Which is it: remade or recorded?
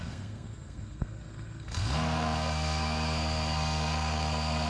remade